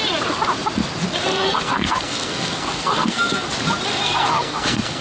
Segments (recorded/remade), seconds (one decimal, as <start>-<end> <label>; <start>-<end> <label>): 0.0-1.3 recorded; 1.3-3.5 remade; 3.5-3.9 recorded; 3.9-5.0 remade